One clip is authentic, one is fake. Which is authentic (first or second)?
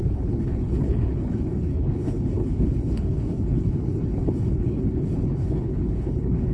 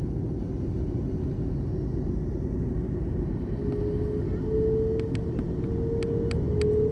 second